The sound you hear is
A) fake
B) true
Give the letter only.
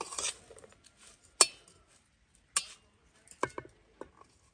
B